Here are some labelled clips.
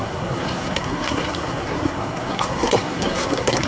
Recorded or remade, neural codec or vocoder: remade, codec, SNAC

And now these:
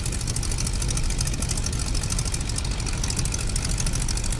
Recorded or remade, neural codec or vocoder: recorded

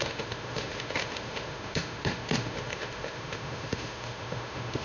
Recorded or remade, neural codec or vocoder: remade, autoencoder, DAC-VAE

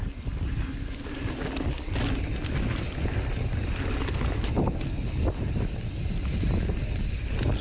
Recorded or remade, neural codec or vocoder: recorded